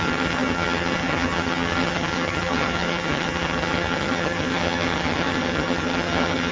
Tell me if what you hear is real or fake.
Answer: fake